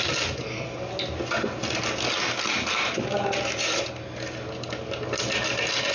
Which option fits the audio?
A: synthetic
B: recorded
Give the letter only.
B